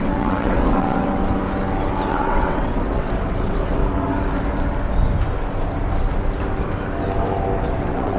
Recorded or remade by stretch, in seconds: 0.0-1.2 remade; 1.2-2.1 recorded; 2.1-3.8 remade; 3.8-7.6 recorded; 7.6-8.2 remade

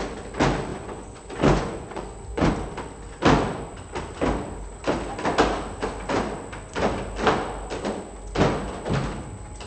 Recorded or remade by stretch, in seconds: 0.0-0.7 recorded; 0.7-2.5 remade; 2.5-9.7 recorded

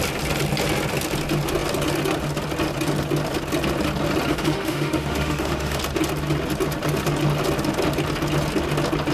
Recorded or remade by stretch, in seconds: 0.0-4.3 recorded; 4.3-5.8 remade; 5.8-9.1 recorded

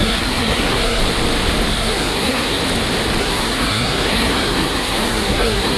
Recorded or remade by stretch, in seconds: 0.0-1.0 remade; 1.0-1.7 recorded; 1.7-2.6 remade; 2.6-3.2 recorded; 3.2-5.8 remade